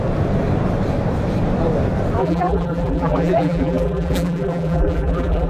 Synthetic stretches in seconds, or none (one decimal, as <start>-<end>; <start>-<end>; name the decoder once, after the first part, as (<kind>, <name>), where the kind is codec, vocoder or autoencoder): 2.2-5.5 (vocoder, BigVGAN v2)